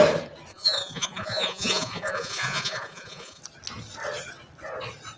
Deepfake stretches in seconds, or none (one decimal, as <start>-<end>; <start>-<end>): 0.5-3.4

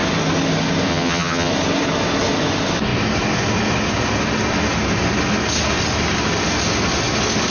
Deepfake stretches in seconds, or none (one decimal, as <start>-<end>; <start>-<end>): 0.9-1.5

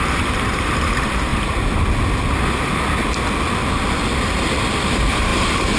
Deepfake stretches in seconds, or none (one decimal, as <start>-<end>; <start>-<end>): 0.0-1.3; 4.8-5.8

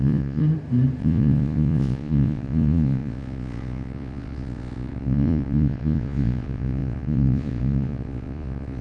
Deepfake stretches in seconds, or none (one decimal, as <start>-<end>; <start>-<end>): 0.0-0.4; 1.0-8.8

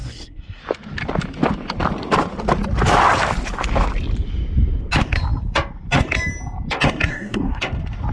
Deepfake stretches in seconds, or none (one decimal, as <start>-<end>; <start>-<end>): 0.0-0.6; 7.1-7.6

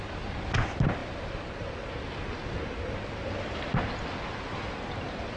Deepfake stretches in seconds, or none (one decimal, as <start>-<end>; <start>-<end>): none

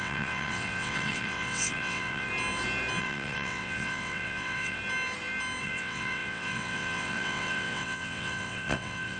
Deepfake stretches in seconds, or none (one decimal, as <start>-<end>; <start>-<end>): 0.0-2.3; 3.0-4.8; 5.6-9.2

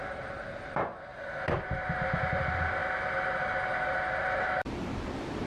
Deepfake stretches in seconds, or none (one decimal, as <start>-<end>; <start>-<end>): 0.0-1.1; 1.9-2.8; 4.2-5.5